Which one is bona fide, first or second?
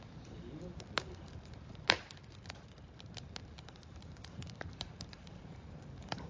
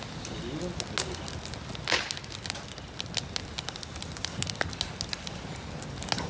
second